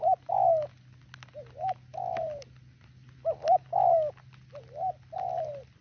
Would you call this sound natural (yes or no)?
yes